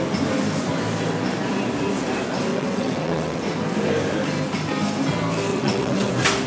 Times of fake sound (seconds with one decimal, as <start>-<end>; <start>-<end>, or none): 2.5-3.4; 5.5-6.1